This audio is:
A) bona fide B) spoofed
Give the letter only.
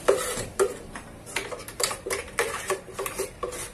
B